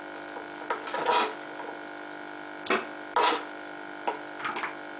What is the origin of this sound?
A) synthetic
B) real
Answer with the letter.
B